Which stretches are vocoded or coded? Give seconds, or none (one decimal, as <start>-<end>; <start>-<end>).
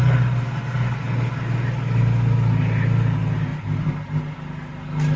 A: none